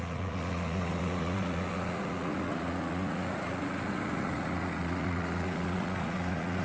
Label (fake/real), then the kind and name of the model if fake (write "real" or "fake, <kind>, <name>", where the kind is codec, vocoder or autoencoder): fake, vocoder, Vocos